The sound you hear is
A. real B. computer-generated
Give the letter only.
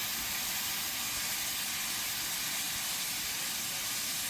A